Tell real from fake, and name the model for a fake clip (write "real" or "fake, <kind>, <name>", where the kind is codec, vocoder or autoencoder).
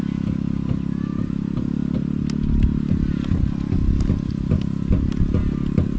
real